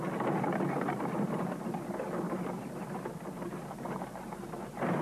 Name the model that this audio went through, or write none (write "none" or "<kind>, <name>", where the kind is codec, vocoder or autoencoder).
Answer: none